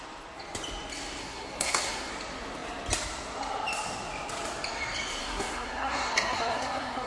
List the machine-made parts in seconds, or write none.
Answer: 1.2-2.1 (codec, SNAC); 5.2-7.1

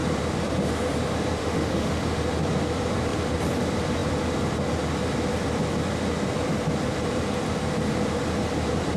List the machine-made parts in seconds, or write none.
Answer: 1.4-1.9 (autoencoder, DAC-VAE)

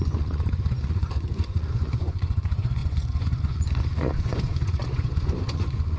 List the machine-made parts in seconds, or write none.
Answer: 0.0-6.0 (vocoder, Vocos)

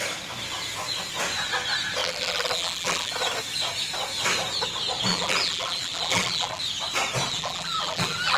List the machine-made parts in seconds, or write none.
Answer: 2.0-3.1 (vocoder, BigVGAN v2); 5.1-6.6; 7.3-8.4